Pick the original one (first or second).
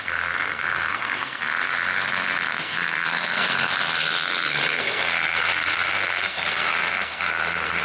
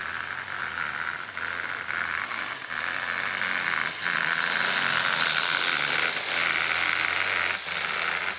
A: second